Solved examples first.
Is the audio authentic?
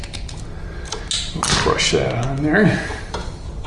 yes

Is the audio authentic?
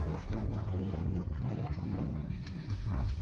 no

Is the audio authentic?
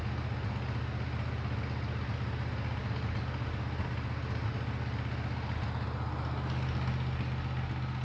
yes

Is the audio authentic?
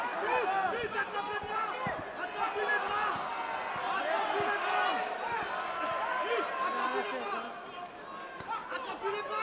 yes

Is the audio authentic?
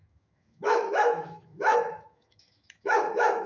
no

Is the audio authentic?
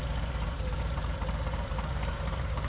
no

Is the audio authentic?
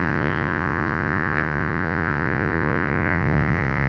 no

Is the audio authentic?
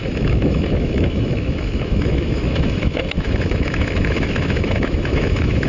no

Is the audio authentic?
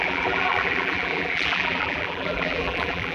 no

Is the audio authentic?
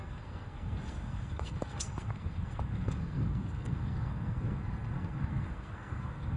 no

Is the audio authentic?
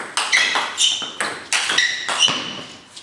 yes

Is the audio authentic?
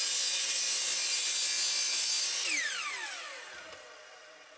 yes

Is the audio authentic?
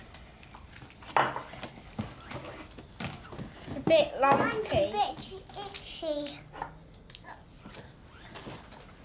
yes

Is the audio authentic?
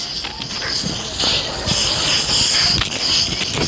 yes